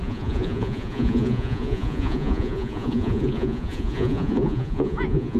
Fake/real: fake